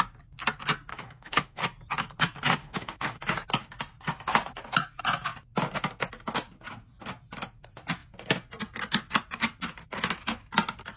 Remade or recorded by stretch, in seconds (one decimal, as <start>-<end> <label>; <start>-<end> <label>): 0.0-0.9 recorded; 0.9-1.6 remade; 1.6-2.6 recorded; 2.6-3.2 remade; 3.2-11.0 recorded